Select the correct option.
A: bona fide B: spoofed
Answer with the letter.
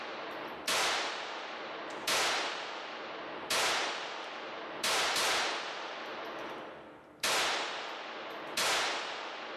A